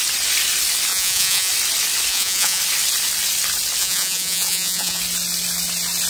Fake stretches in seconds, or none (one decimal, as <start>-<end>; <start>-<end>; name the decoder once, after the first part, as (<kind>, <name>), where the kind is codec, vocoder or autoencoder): 0.9-1.5 (vocoder, Vocos); 2.1-2.6; 3.8-5.0